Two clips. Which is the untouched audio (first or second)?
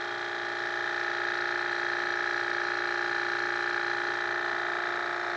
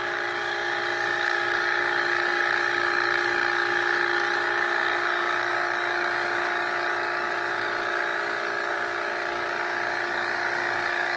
first